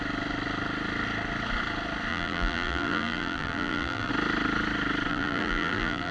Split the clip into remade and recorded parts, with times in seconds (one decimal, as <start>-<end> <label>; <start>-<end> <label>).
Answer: 0.0-2.1 recorded; 2.1-4.1 remade; 4.1-5.1 recorded; 5.1-6.1 remade